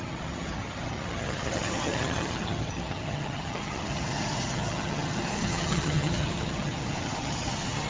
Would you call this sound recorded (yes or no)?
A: no